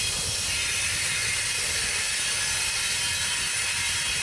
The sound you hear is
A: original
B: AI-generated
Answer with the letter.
A